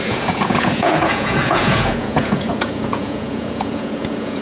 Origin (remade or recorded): remade